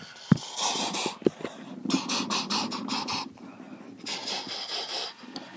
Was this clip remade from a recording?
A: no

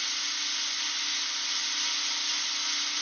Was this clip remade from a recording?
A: no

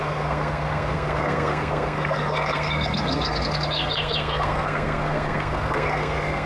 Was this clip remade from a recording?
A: yes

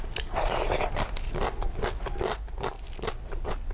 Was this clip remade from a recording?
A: no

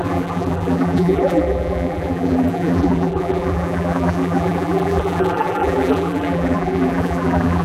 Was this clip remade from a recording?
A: yes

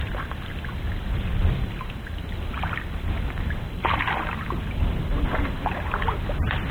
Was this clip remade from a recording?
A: no